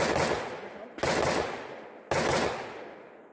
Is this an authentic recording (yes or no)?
yes